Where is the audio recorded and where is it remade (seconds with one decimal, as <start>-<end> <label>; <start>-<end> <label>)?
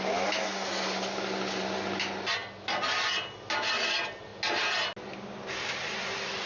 0.0-6.5 recorded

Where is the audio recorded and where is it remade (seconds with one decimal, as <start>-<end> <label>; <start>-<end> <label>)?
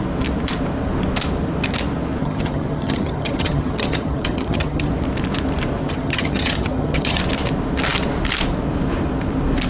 0.0-2.2 recorded; 2.2-4.9 remade; 4.9-5.8 recorded; 5.8-7.2 remade; 7.2-9.7 recorded